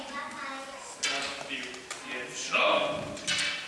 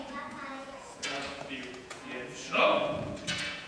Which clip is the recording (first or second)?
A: first